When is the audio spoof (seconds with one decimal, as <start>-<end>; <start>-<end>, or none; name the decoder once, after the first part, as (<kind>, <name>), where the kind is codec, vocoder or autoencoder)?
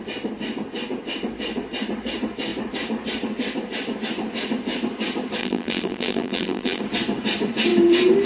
5.4-6.8 (vocoder, BigVGAN v2)